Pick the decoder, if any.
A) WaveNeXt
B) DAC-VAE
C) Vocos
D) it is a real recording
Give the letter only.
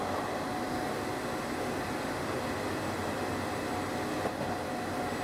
D